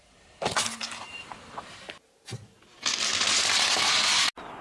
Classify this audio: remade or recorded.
recorded